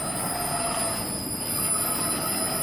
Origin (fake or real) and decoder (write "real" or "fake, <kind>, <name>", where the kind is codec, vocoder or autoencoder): real